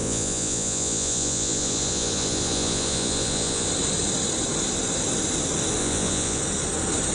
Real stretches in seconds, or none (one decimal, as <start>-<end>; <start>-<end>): 3.7-5.8; 6.4-7.1